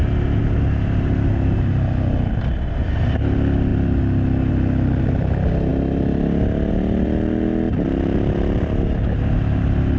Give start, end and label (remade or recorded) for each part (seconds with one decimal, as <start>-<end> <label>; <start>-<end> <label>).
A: 0.0-10.0 recorded